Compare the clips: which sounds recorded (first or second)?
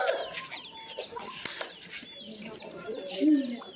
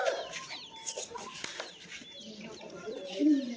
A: first